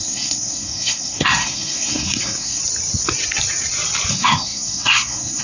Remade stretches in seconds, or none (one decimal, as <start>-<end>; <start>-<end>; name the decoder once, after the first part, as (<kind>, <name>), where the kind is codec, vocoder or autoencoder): 0.0-2.6 (codec, SNAC); 4.1-5.4